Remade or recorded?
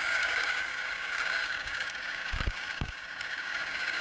remade